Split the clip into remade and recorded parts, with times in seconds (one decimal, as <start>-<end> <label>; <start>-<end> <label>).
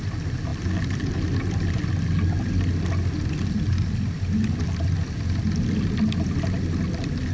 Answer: 0.0-7.3 recorded